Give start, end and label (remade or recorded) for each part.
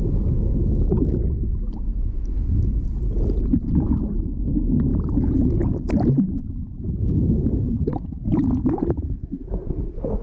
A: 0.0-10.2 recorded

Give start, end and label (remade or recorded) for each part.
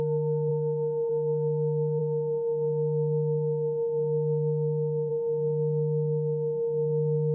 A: 0.0-7.3 recorded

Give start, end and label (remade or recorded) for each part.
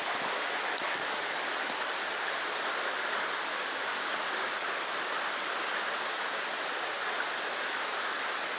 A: 0.0-8.6 recorded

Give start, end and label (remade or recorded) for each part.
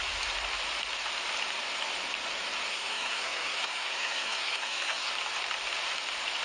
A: 0.0-2.7 recorded; 2.7-5.1 remade; 5.1-6.4 recorded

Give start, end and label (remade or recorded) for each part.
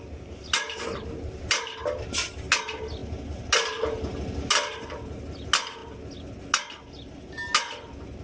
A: 0.0-8.2 recorded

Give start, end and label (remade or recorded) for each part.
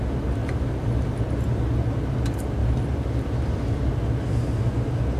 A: 0.0-0.4 recorded; 0.4-1.0 remade; 1.0-5.2 recorded